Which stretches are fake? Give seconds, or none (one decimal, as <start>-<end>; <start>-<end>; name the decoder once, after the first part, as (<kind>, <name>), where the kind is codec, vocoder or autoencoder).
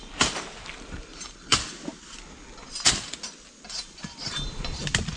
none